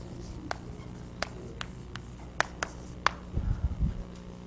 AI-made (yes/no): no